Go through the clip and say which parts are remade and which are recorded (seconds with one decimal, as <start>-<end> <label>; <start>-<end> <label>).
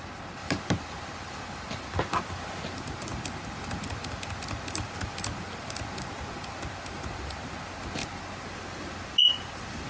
0.0-0.4 recorded; 0.4-1.6 remade; 1.6-9.9 recorded